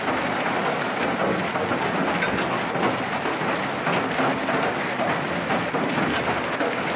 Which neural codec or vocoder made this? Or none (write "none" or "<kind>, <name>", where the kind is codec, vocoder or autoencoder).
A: none